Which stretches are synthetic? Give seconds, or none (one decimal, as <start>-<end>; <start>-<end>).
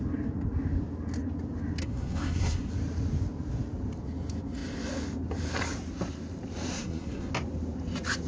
1.8-2.7; 6.7-7.3